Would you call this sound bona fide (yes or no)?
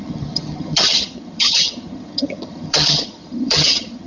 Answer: no